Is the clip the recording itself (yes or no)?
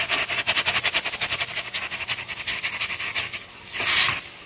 yes